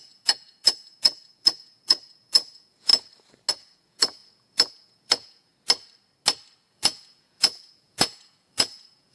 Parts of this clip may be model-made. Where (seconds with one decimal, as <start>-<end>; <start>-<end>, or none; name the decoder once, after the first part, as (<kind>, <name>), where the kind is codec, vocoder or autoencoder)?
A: 0.0-2.9 (vocoder, Vocos); 3.5-5.5; 6.7-9.1